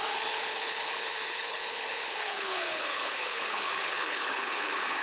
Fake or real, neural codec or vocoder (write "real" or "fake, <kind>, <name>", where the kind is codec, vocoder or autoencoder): fake, codec, HILCodec